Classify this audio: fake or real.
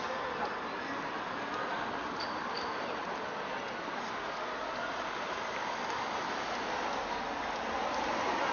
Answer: real